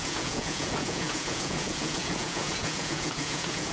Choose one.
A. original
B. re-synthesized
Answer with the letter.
B